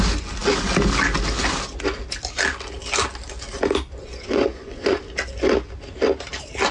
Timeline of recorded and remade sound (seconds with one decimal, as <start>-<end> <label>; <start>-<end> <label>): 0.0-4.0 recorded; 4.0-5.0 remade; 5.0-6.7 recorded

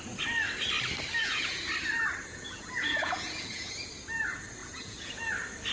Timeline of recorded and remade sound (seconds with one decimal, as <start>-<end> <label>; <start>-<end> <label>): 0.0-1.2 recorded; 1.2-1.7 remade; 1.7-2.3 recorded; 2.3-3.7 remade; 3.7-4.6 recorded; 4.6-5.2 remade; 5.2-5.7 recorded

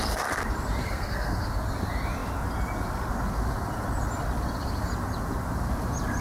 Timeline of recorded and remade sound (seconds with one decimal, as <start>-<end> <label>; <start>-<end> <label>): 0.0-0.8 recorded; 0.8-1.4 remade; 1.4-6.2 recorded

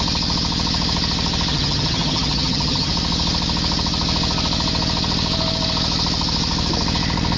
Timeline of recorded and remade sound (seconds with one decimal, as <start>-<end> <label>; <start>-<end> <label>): 0.0-1.5 recorded; 1.5-2.9 remade; 2.9-7.4 recorded